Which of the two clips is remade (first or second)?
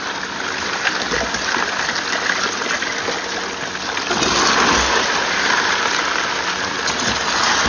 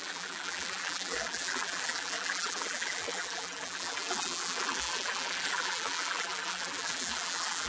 second